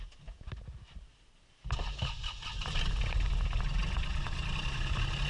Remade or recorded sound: recorded